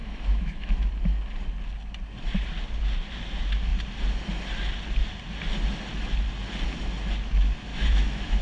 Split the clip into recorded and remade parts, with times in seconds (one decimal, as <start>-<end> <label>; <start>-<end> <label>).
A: 0.0-0.9 remade; 0.9-7.7 recorded; 7.7-8.4 remade